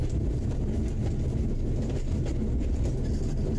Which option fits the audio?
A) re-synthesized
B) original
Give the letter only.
B